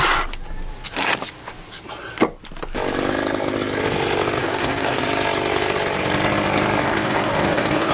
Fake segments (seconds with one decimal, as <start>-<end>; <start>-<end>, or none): 4.4-5.0; 6.8-7.9